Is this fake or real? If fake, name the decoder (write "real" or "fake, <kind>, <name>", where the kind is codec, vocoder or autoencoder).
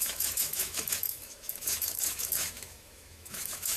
fake, autoencoder, DAC-VAE